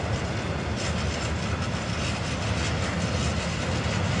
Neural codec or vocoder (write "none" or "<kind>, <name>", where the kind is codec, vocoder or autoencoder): none